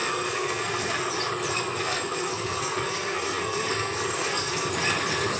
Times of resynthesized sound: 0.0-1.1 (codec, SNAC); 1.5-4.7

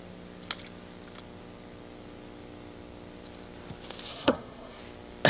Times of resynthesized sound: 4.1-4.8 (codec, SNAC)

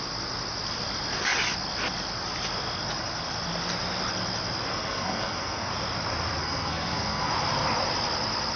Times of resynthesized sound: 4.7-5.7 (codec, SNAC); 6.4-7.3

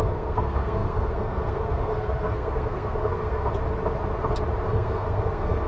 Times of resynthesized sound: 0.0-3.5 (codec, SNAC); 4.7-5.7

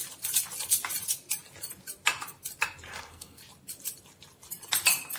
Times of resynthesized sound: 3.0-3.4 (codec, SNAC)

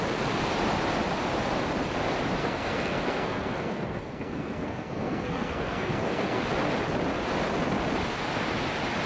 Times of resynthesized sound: 2.4-6.4 (codec, SNAC)

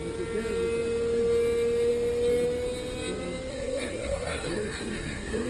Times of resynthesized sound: 3.5-5.5 (codec, SNAC)

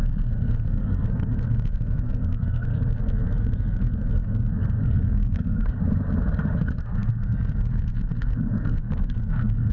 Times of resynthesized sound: 0.0-5.8 (codec, SNAC); 6.6-9.7